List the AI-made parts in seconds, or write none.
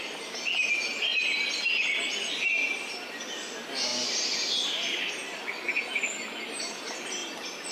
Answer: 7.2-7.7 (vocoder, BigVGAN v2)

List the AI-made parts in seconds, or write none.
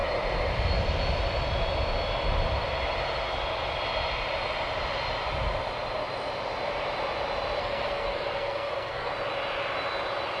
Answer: 7.6-9.1 (codec, SNAC)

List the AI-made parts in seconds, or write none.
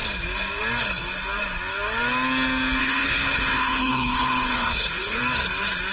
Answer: 2.8-5.2 (codec, HILCodec)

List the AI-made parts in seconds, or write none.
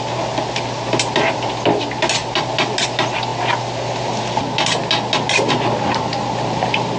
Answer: none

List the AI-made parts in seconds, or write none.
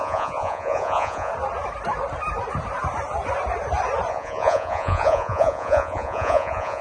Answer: 0.0-1.3 (vocoder, Vocos); 4.1-6.8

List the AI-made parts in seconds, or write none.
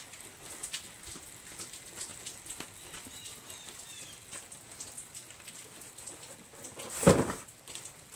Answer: none